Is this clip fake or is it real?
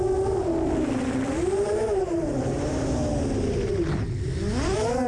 real